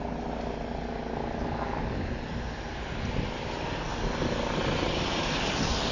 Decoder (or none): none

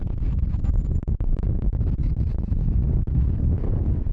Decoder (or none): none